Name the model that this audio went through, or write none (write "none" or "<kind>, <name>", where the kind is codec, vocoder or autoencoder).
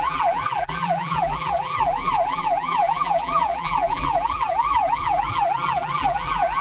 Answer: vocoder, BigVGAN v2